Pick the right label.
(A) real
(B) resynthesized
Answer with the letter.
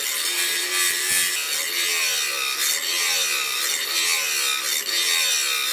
A